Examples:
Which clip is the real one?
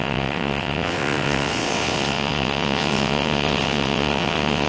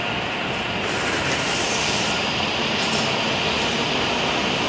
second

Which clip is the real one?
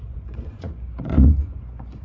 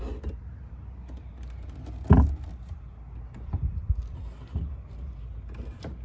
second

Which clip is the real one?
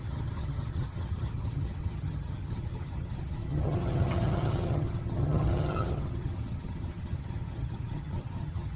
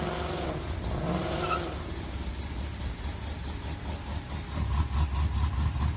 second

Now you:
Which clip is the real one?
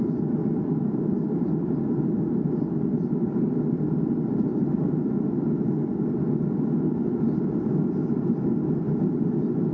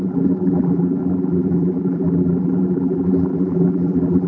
first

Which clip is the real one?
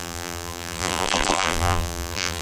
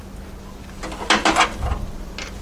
second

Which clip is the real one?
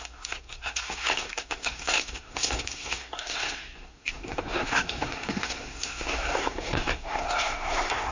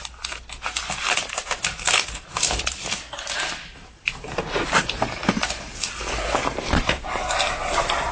second